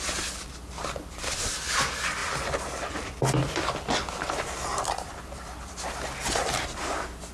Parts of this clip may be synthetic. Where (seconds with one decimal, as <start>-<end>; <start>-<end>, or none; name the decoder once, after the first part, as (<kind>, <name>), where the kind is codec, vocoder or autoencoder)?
2.2-5.8 (vocoder, BigVGAN v2)